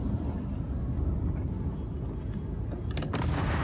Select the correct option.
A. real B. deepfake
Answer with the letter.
A